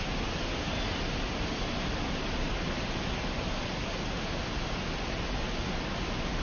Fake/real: real